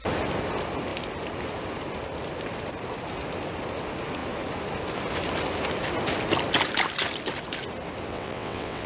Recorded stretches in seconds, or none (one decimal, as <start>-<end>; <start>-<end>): 0.0-8.1